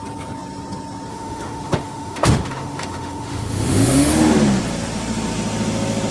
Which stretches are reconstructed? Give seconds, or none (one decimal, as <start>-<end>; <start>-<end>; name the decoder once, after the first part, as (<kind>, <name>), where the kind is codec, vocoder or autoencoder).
1.1-4.1 (autoencoder, DAC-VAE)